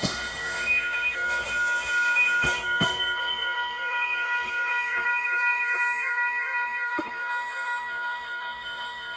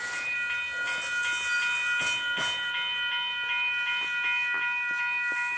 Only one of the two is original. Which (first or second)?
second